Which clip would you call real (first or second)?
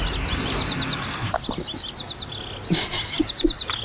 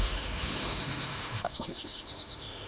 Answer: first